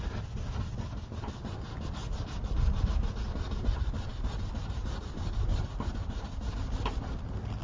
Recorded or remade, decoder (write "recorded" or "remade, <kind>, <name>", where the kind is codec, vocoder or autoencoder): recorded